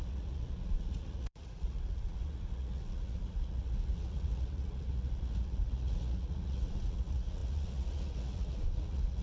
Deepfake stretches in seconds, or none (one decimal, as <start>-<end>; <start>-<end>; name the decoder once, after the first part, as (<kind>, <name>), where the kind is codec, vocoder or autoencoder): 0.0-9.2 (vocoder, Vocos)